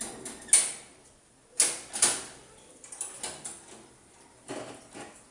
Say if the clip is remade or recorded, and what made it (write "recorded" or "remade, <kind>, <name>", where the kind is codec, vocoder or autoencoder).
recorded